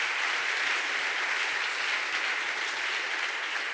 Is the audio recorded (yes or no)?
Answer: yes